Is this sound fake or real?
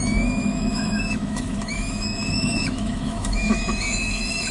fake